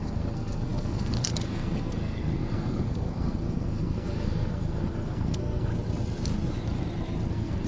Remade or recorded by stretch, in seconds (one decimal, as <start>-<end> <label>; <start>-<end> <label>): 0.0-5.7 remade; 5.7-7.3 recorded; 7.3-7.7 remade